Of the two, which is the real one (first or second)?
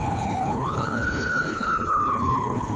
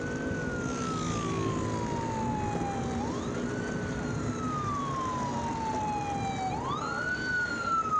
second